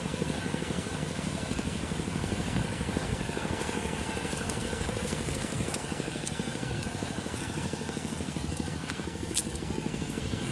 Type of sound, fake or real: fake